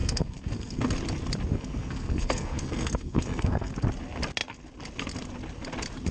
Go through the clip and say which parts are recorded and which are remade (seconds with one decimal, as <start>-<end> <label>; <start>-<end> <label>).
0.0-0.8 remade; 0.8-1.5 recorded; 1.5-3.7 remade; 3.7-6.1 recorded